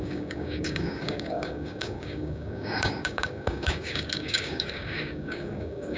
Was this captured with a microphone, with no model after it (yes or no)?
no